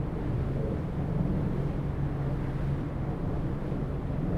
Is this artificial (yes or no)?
no